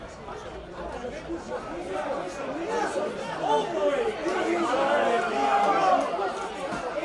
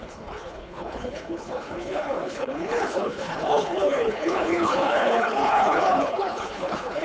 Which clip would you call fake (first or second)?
second